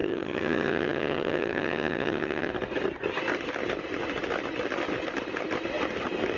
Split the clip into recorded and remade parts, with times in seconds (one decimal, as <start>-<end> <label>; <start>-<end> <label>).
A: 0.0-2.5 remade; 2.5-6.4 recorded